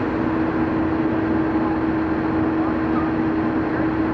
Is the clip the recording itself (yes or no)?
yes